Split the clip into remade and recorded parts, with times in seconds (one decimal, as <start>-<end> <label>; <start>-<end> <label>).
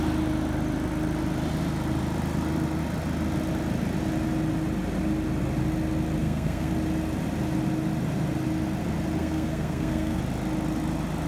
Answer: 0.0-6.2 recorded; 6.2-6.7 remade; 6.7-9.2 recorded; 9.2-10.2 remade; 10.2-11.3 recorded